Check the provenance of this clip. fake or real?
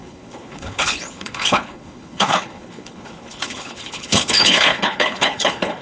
fake